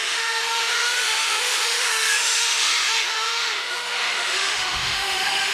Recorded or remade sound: remade